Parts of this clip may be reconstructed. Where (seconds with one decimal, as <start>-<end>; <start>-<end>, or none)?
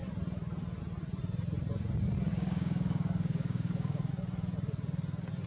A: 2.3-4.1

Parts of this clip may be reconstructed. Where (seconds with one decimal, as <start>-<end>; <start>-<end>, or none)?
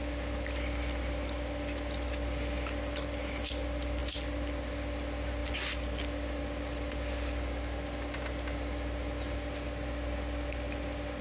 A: none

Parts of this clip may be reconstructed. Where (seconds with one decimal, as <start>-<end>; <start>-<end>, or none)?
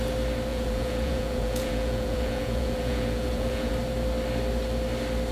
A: 0.5-3.7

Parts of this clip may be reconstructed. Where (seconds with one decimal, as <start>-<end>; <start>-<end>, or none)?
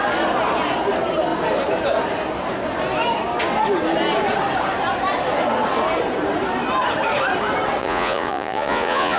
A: 7.8-9.2